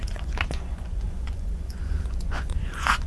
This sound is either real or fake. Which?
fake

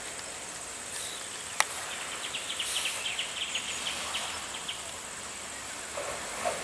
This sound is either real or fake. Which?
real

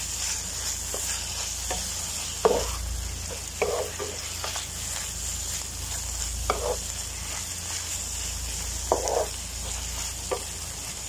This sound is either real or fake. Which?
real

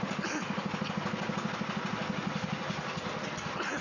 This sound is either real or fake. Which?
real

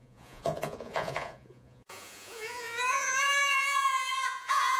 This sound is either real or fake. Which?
fake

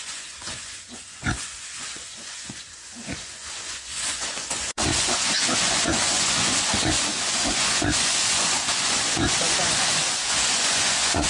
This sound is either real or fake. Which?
fake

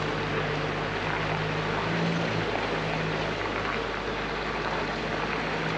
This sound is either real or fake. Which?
real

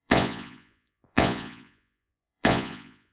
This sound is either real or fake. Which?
fake